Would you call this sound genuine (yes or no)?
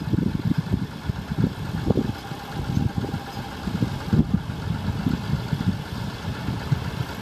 yes